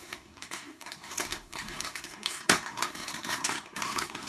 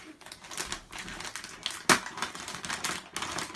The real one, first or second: second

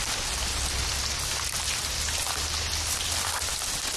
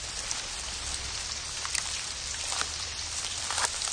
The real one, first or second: first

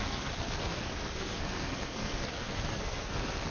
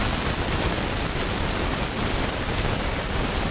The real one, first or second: second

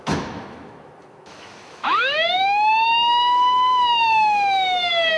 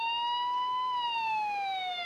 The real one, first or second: second